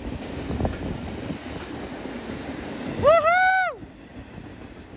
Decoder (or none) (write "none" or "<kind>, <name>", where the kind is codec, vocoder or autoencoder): none